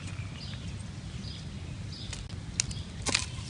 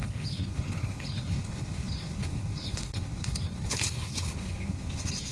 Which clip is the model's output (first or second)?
second